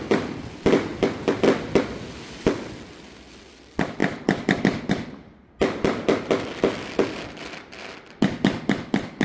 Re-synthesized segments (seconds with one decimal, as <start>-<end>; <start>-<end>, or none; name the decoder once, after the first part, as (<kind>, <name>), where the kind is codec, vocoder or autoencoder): none